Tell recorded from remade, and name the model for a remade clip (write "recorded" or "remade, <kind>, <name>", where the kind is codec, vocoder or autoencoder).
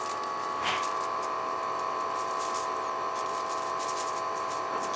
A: remade, vocoder, BigVGAN v2